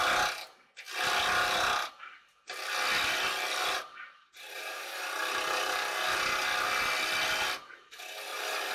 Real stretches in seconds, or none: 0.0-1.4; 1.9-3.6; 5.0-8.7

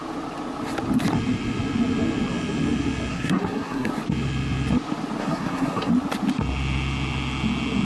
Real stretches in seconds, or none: 0.0-3.1; 3.9-5.2; 5.9-7.8

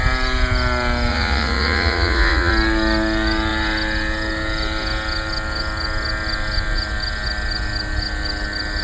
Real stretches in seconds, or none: 0.0-1.1; 2.5-8.8